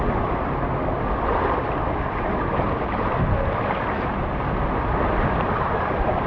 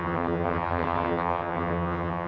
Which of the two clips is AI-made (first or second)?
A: second